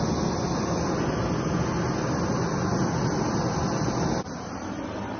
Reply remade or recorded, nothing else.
recorded